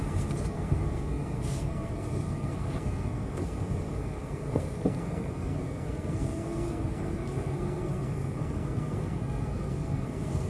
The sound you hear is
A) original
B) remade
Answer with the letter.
B